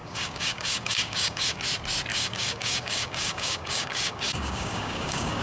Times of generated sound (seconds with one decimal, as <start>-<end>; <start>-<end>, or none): 0.0-1.6; 2.1-5.4